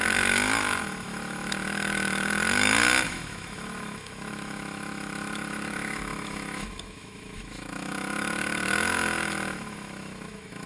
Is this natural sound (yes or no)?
no